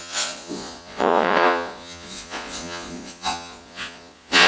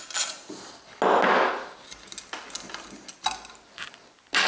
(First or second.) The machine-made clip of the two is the first